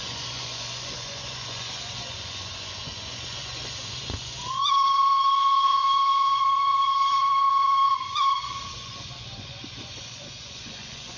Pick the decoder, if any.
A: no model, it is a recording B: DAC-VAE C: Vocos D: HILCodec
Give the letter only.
C